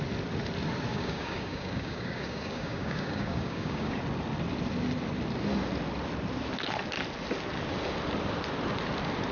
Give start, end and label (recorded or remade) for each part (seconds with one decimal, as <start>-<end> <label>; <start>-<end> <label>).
0.0-0.9 recorded; 0.9-4.0 remade; 4.0-9.3 recorded